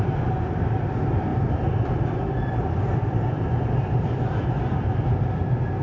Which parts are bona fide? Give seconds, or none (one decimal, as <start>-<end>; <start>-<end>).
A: none